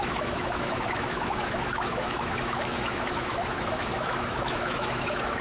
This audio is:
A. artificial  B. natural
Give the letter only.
A